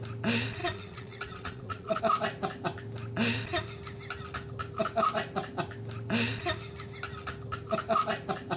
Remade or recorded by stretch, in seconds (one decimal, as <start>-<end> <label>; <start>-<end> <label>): 0.0-0.6 recorded; 0.6-2.0 remade; 2.0-8.6 recorded